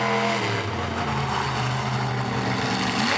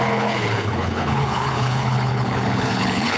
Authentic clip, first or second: first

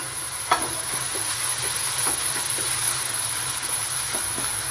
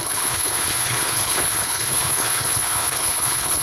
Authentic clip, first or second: first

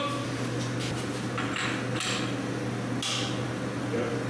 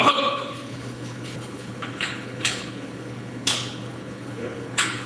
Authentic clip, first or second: first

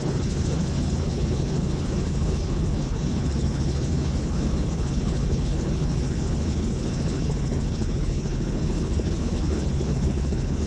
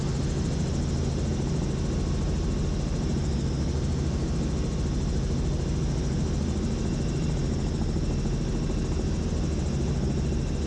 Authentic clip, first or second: second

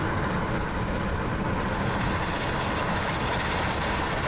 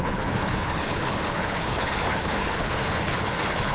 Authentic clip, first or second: first